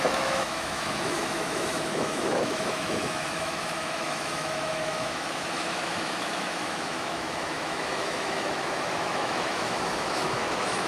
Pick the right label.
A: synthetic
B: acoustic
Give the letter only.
A